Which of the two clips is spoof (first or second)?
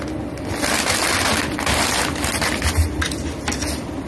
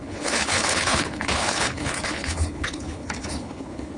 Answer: second